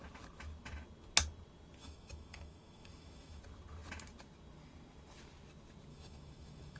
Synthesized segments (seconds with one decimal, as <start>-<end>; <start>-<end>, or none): 1.8-3.4; 5.9-6.8